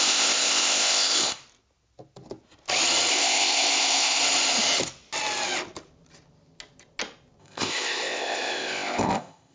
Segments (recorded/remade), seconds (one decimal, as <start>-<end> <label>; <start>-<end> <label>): 0.0-1.4 remade; 1.4-3.1 recorded; 3.1-4.2 remade; 4.2-7.4 recorded; 7.4-9.5 remade